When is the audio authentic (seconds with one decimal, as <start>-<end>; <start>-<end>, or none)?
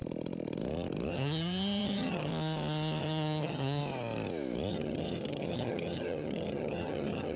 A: 0.0-1.1; 2.3-3.0; 3.8-4.7